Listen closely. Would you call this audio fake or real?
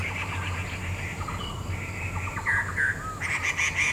real